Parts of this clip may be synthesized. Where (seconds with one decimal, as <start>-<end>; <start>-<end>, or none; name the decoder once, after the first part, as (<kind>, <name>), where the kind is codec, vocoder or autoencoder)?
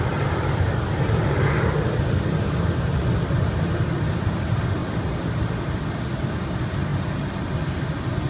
none